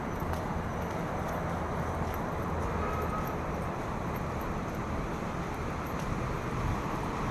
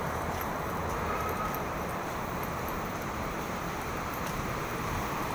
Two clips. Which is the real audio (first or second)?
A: first